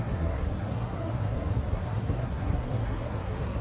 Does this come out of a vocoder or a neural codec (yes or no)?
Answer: yes